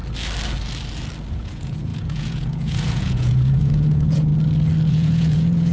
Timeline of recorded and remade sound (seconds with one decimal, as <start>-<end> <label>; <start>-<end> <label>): 0.0-1.3 recorded; 1.3-4.3 remade; 4.3-4.9 recorded; 4.9-5.7 remade